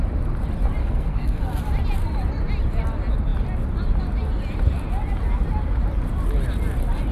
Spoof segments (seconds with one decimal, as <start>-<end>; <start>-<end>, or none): 0.8-1.4